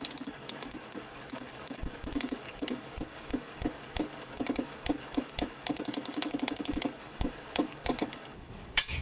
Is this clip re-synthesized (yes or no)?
yes